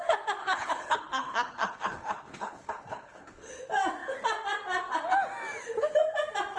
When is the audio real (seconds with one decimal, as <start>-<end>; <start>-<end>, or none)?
0.0-0.4; 3.5-6.6